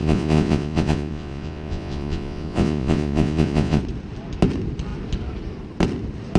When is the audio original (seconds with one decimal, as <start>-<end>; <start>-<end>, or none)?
3.8-6.4